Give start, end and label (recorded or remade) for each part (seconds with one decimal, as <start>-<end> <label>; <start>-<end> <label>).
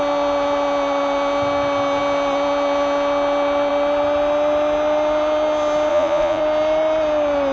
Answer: 0.0-5.9 recorded; 5.9-6.4 remade; 6.4-7.5 recorded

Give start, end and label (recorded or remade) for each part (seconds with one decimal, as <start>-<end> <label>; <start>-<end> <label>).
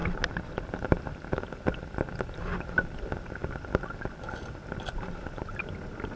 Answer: 0.0-6.2 recorded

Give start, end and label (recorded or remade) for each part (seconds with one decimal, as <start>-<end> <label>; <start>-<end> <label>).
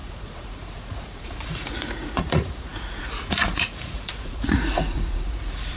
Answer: 0.0-5.8 remade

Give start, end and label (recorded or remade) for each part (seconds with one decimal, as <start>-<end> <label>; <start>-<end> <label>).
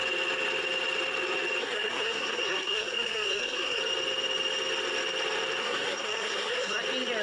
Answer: 0.0-1.6 recorded; 1.6-3.8 remade; 3.8-5.6 recorded; 5.6-6.8 remade; 6.8-7.2 recorded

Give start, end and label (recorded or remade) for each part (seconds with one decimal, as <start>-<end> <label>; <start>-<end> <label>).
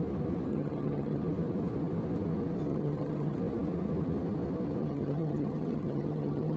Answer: 0.0-0.5 recorded; 0.5-1.2 remade; 1.2-2.7 recorded; 2.7-3.4 remade; 3.4-4.8 recorded; 4.8-6.6 remade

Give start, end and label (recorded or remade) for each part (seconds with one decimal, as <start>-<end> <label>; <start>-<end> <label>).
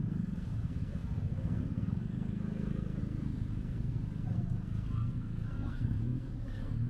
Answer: 0.0-6.9 remade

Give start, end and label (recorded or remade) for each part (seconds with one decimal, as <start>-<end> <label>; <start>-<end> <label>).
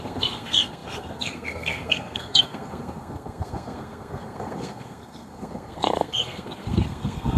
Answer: 0.0-7.4 remade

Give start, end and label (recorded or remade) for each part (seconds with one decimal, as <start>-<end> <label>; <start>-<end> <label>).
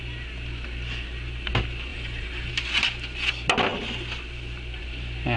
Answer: 0.0-1.9 recorded; 1.9-2.5 remade; 2.5-5.4 recorded